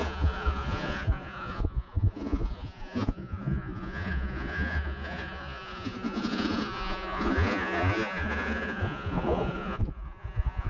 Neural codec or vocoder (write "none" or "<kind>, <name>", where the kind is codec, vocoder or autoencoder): vocoder, Vocos